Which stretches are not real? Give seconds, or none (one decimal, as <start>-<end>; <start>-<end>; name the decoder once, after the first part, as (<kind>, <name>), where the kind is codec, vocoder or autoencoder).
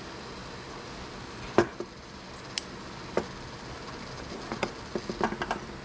none